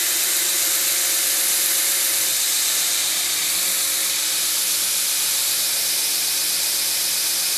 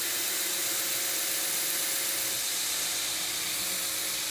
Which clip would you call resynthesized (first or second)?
first